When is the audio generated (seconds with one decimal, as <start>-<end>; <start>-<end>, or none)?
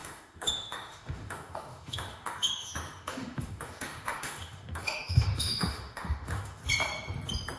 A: 0.0-6.6